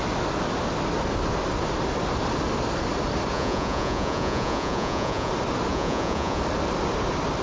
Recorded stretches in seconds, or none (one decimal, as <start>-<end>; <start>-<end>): 0.0-3.3; 5.3-5.7; 6.4-7.4